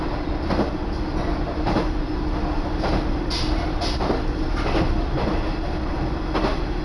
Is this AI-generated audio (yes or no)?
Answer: no